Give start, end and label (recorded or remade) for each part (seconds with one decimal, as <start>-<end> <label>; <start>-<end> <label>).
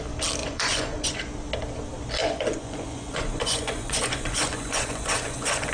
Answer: 0.0-0.4 recorded; 0.4-1.2 remade; 1.2-2.2 recorded; 2.2-5.7 remade